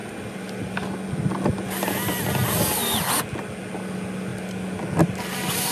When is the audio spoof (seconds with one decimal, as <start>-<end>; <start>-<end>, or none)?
none